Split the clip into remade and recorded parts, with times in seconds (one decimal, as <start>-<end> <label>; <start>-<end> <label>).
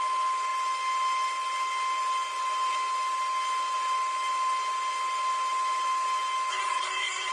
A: 0.0-6.5 recorded; 6.5-7.3 remade